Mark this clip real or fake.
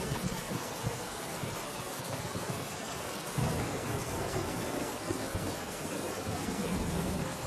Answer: fake